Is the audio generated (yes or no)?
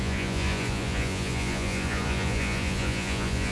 yes